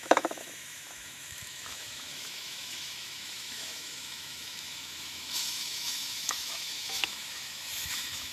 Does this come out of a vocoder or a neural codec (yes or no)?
yes